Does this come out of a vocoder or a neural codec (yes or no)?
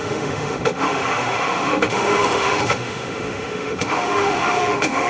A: yes